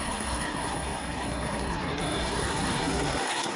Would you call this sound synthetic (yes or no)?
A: yes